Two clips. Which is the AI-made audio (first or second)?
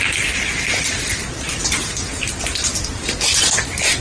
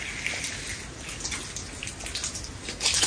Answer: first